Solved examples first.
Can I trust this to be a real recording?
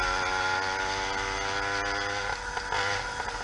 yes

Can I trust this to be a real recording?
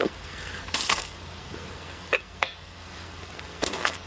no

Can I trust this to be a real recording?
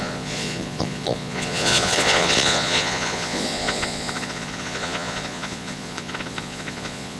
no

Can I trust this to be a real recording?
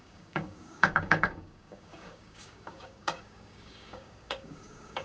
no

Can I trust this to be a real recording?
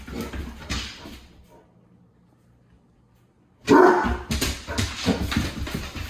yes